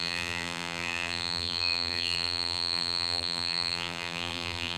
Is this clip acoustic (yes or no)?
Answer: no